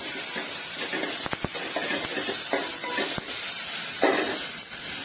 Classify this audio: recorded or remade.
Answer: recorded